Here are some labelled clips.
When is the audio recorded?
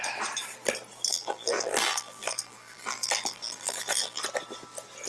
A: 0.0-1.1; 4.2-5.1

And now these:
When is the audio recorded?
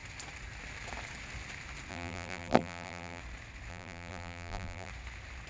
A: 0.0-1.9; 3.2-3.7; 4.9-5.5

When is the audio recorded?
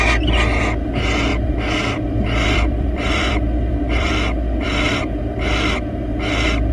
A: 0.0-1.3; 5.2-6.7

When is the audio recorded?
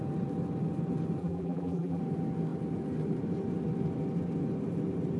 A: 0.0-1.2; 2.0-5.2